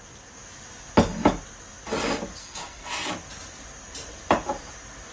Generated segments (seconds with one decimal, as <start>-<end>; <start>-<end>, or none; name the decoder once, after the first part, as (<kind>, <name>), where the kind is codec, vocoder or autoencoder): 2.4-3.1 (codec, SNAC)